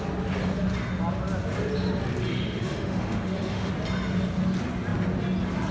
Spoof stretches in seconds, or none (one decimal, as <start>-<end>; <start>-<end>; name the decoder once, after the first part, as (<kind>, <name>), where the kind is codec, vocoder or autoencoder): 2.3-3.7 (autoencoder, DAC-VAE)